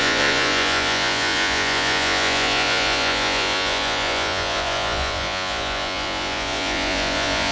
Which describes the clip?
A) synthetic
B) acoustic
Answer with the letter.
A